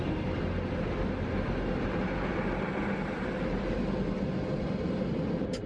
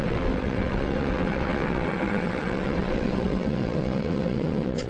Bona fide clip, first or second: first